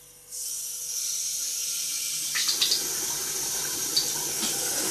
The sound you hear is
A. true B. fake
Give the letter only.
A